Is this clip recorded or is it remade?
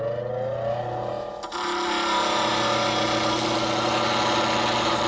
recorded